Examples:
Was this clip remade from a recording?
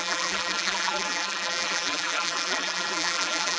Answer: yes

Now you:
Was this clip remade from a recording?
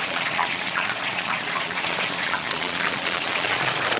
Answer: yes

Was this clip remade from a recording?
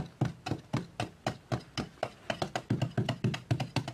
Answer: no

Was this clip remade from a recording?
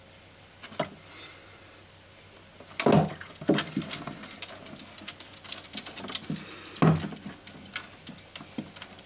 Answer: no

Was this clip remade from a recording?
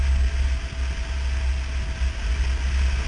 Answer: no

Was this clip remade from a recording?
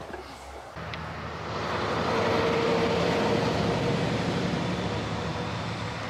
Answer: no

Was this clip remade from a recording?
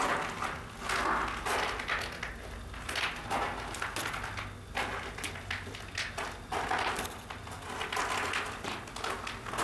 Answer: no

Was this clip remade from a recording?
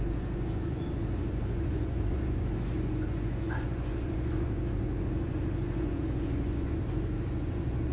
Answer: yes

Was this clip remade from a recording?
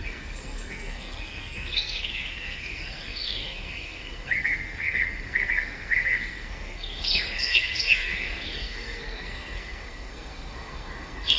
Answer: yes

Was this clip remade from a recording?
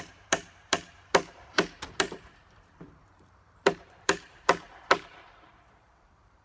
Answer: yes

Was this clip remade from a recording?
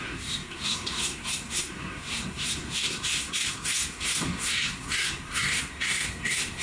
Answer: yes